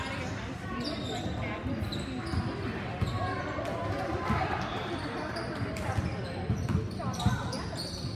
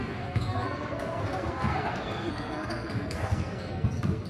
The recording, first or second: first